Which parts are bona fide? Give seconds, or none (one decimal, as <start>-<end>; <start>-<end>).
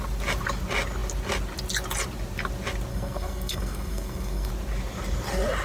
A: 0.0-2.9; 4.5-5.6